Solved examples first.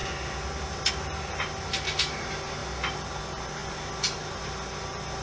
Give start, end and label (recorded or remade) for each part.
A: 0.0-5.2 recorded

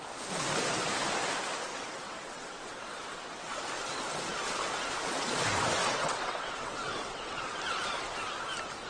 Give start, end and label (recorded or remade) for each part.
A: 0.0-1.7 recorded; 1.7-3.5 remade; 3.5-5.8 recorded; 5.8-7.6 remade; 7.6-8.9 recorded